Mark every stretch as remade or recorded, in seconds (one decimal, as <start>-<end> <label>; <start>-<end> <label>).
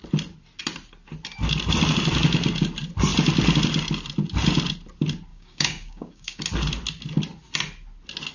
0.0-5.3 recorded; 5.3-6.4 remade; 6.4-8.3 recorded